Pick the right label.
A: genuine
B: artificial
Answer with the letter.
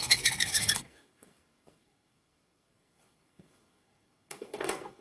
B